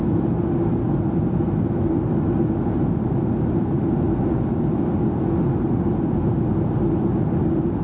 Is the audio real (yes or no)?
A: yes